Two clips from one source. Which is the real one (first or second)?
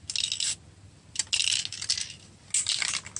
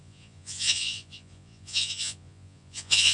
first